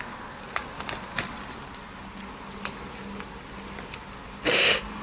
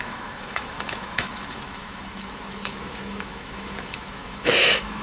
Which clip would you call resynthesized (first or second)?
second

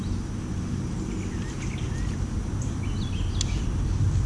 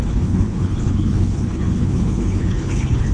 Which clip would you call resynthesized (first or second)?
second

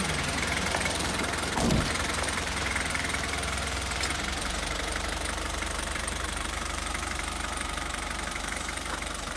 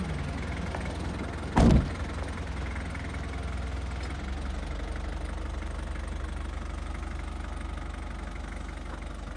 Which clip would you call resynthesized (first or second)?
first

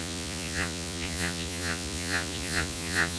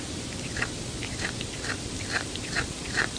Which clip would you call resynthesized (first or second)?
first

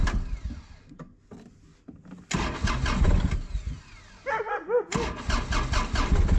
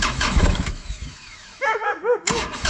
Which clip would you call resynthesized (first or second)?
second